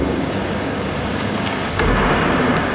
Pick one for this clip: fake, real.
fake